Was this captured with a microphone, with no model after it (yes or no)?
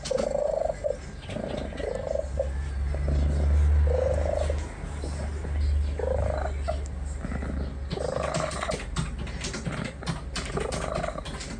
yes